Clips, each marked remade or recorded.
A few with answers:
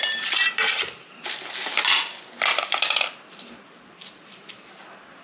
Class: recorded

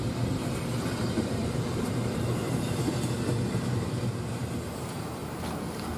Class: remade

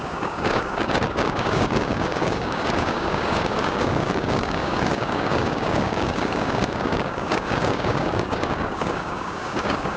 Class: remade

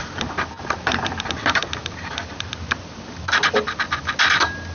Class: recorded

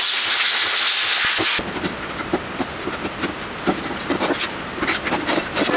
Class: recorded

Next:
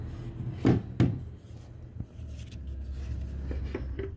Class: recorded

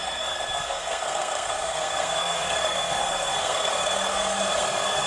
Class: remade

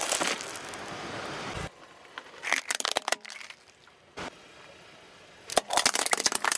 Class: recorded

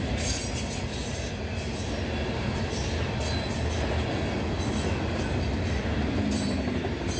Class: recorded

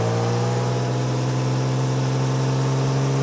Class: recorded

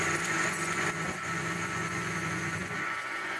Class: remade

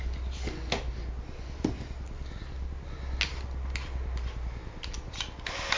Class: recorded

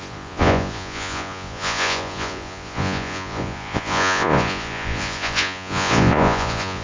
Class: remade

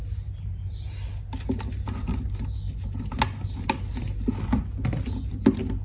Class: recorded